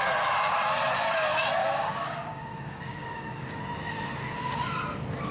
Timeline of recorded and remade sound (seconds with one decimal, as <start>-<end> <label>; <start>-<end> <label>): 0.0-1.6 recorded; 1.6-3.6 remade; 3.6-5.3 recorded